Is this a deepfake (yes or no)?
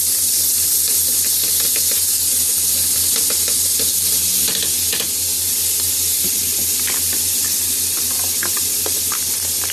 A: no